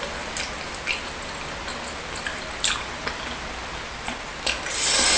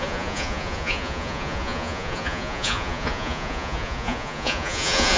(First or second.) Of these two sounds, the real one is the first